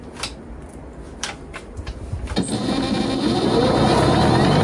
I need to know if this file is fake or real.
real